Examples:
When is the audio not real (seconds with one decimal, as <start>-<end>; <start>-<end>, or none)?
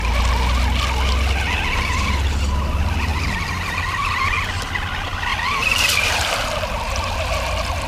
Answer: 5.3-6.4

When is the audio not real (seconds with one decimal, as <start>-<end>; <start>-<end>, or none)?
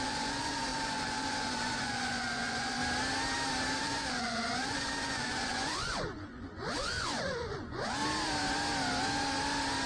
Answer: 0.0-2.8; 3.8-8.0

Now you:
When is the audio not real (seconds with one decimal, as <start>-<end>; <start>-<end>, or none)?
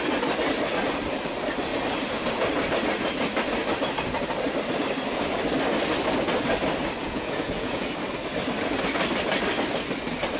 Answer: 7.0-7.9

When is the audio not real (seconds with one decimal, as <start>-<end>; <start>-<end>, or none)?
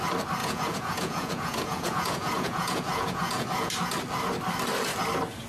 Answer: 0.4-3.7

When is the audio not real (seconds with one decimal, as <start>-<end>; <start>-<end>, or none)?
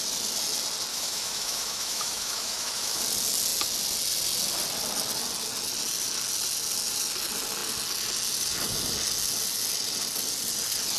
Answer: 0.9-3.0